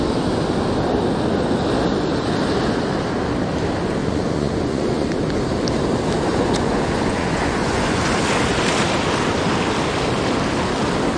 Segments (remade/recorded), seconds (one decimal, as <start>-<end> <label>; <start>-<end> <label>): 0.0-4.0 recorded; 4.0-5.1 remade; 5.1-6.3 recorded; 6.3-8.0 remade; 8.0-11.2 recorded